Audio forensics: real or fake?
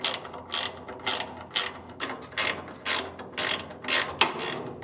real